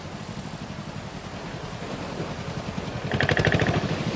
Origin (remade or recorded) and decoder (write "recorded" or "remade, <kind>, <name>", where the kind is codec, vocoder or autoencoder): recorded